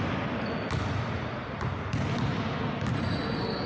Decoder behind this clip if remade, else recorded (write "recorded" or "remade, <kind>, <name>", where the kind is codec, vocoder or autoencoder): recorded